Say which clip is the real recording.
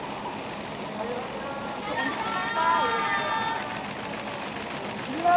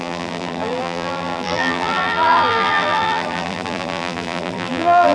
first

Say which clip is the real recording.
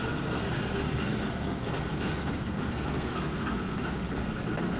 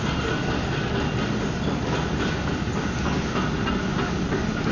second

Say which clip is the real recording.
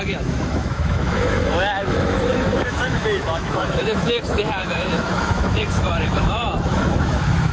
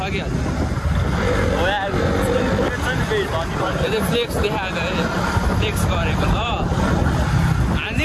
second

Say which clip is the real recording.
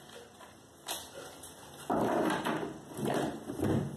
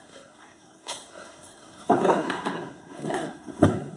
first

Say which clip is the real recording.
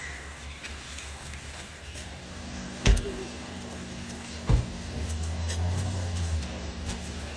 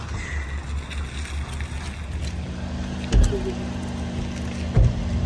second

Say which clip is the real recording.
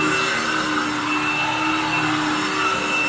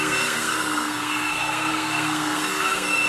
first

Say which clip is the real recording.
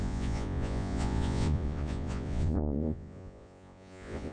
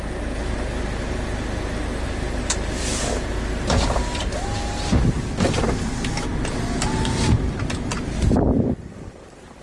second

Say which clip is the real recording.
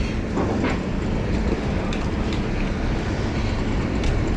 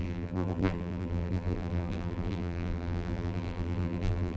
first